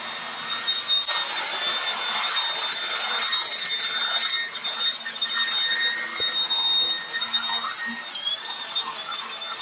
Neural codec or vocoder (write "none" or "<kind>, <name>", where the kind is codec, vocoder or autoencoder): none